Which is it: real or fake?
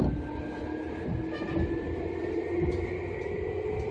real